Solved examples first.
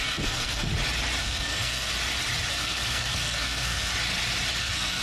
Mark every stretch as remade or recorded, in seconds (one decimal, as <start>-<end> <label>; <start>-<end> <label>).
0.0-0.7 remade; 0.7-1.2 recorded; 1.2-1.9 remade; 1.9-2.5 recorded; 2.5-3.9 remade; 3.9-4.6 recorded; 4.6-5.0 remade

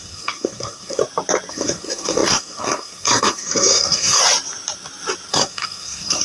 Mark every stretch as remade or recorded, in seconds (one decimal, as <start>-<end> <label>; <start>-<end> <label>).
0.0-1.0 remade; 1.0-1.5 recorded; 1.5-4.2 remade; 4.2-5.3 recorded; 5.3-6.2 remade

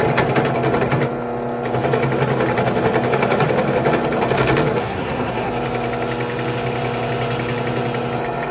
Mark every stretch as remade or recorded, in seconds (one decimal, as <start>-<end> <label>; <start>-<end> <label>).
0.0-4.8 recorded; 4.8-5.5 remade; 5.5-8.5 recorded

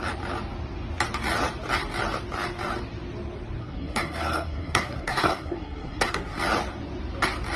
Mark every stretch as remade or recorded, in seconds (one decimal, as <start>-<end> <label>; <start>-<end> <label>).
0.0-3.6 recorded; 3.6-6.4 remade; 6.4-7.6 recorded

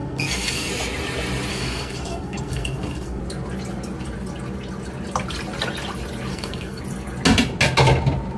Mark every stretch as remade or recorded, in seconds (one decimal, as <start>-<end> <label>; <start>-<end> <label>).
0.0-0.7 remade; 0.7-1.5 recorded; 1.5-3.2 remade; 3.2-6.3 recorded; 6.3-6.8 remade; 6.8-8.4 recorded